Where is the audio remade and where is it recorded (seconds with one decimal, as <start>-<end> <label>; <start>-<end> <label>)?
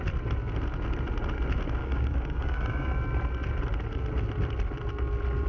0.0-1.8 recorded; 1.8-3.0 remade; 3.0-5.5 recorded